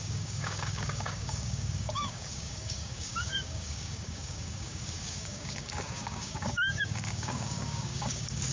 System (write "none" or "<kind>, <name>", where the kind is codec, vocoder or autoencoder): codec, DAC